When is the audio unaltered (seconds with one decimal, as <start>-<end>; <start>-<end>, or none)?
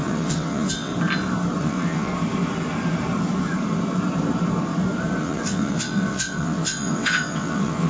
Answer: 0.9-1.6; 2.1-5.2